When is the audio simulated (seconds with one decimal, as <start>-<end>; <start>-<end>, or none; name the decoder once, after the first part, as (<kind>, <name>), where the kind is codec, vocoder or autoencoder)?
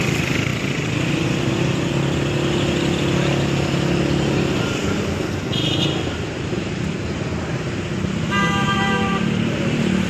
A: none